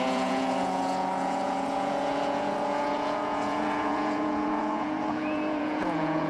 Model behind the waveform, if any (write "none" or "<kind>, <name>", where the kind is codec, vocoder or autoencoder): vocoder, Vocos